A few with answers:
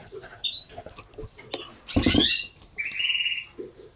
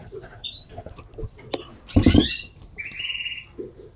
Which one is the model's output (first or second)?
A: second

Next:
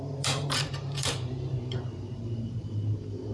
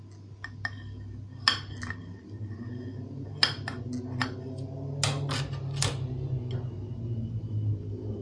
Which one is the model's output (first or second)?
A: first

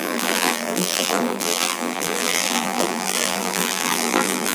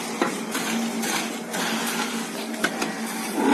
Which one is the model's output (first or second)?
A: first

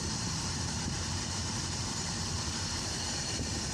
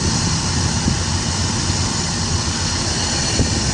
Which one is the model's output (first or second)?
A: first